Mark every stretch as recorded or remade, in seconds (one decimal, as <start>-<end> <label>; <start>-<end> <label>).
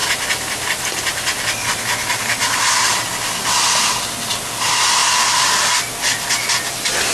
0.0-7.1 recorded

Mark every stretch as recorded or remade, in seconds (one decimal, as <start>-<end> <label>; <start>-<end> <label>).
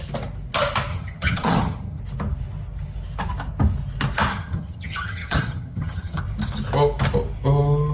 0.0-0.9 recorded; 0.9-2.0 remade; 2.0-4.3 recorded; 4.3-6.2 remade; 6.2-7.9 recorded